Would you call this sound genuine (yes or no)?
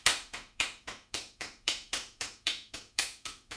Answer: no